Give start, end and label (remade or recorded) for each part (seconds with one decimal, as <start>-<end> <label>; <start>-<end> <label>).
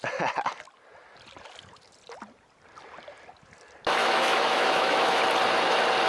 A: 0.0-4.0 recorded; 4.0-5.2 remade; 5.2-6.1 recorded